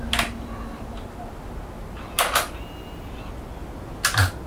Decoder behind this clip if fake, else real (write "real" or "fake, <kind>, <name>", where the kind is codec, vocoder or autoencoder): real